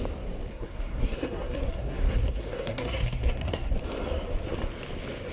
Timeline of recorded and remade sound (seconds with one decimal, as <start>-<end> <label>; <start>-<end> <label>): 0.0-0.5 recorded; 0.5-3.7 remade; 3.7-5.3 recorded